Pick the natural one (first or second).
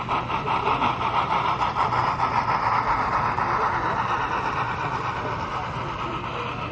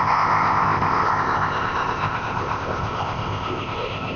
first